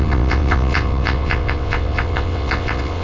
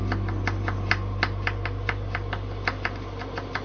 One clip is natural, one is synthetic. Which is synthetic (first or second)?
first